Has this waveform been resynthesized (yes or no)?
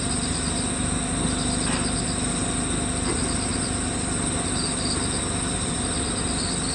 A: no